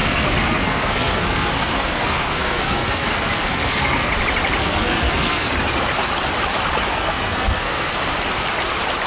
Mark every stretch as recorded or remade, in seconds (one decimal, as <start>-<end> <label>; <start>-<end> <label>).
0.0-4.1 remade; 4.1-4.6 recorded; 4.6-5.5 remade; 5.5-6.9 recorded; 6.9-7.9 remade; 7.9-9.1 recorded